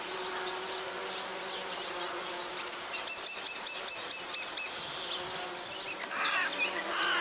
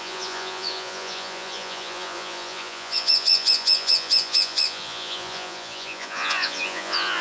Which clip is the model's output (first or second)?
second